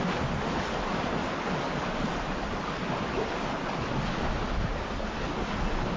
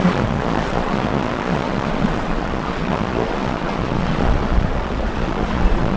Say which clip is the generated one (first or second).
second